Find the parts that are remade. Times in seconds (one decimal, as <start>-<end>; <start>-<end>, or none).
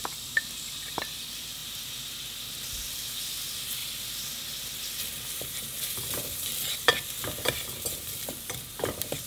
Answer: 0.0-1.6; 2.9-9.3